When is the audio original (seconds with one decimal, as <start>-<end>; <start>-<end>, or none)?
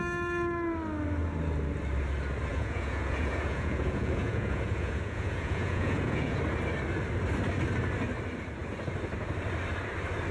0.0-2.5; 6.4-10.3